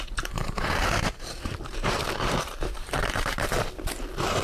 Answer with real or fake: fake